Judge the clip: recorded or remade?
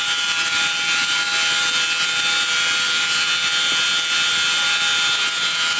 recorded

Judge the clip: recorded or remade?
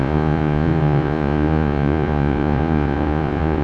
remade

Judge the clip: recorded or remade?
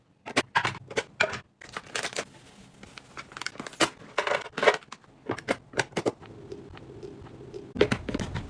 recorded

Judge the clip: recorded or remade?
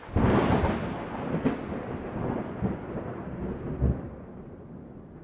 recorded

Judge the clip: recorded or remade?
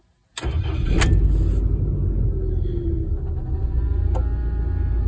recorded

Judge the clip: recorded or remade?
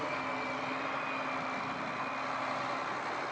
recorded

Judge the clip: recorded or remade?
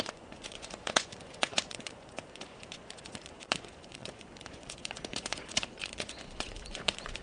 remade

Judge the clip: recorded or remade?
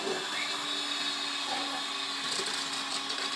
recorded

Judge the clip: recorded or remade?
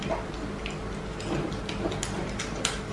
recorded